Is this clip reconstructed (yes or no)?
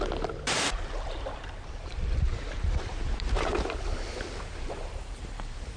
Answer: yes